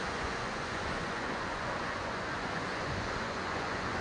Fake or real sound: fake